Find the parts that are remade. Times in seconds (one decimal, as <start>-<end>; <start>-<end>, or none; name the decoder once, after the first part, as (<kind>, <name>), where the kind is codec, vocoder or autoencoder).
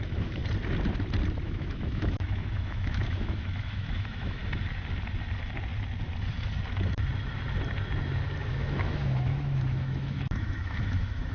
0.0-0.4 (autoencoder, DAC-VAE); 1.4-4.4; 8.5-11.3